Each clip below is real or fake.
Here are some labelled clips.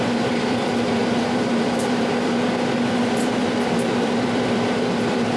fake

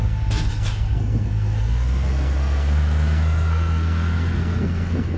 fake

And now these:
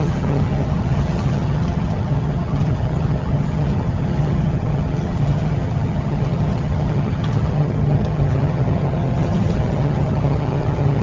fake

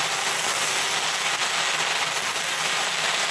real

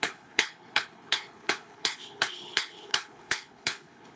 fake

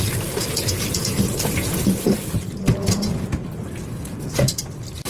real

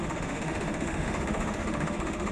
fake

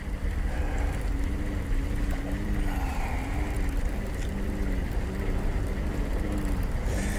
real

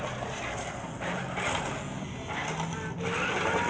real